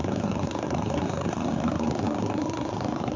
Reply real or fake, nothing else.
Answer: fake